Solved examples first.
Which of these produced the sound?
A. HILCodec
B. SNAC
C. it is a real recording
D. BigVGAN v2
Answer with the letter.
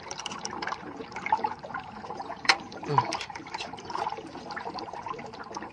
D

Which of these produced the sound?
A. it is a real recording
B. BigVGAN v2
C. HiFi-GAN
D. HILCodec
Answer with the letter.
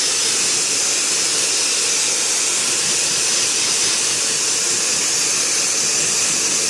A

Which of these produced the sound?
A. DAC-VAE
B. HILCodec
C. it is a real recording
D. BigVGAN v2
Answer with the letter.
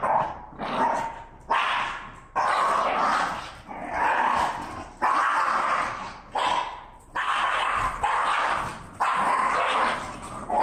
C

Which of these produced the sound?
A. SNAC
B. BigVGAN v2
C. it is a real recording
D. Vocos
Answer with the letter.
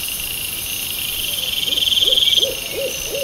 C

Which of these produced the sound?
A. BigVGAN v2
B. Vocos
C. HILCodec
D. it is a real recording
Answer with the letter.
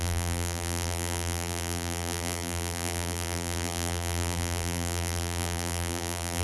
A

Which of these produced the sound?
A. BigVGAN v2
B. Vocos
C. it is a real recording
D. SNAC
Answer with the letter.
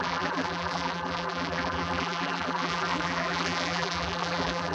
A